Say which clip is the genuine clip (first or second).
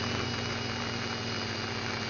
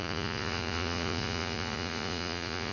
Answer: first